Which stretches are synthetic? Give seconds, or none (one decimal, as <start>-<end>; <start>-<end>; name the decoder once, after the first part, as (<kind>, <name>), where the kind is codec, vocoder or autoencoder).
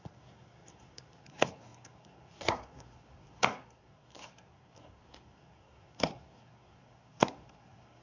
0.0-8.0 (codec, SNAC)